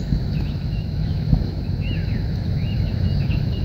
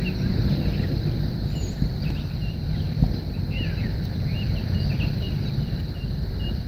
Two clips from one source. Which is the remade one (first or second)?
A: first